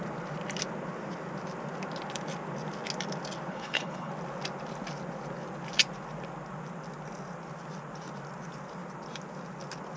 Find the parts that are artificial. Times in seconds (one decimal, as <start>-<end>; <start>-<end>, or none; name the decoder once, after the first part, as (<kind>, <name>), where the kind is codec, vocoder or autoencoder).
3.5-4.1 (codec, HILCodec)